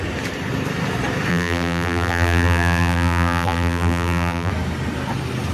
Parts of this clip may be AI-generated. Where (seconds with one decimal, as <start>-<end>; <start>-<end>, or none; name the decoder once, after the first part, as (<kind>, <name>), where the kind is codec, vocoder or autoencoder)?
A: 1.3-4.5 (vocoder, BigVGAN v2)